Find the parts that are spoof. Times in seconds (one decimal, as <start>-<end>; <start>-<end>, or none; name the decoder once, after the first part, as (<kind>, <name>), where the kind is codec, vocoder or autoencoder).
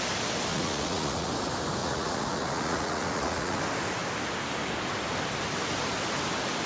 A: 0.5-1.3 (vocoder, Vocos); 1.8-3.6